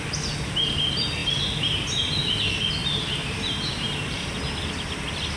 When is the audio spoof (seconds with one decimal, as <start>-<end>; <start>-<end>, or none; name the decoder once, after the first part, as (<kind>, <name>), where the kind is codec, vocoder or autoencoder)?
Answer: 1.2-2.3 (vocoder, BigVGAN v2); 2.8-4.7